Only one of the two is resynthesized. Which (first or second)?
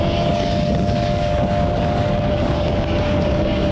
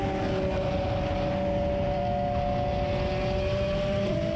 first